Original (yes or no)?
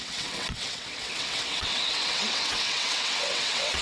no